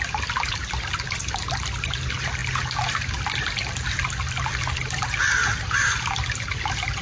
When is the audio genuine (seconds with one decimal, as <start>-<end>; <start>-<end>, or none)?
0.0-7.0